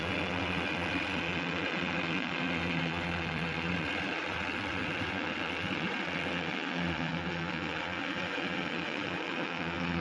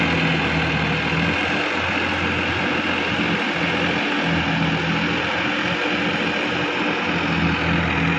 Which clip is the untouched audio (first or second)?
second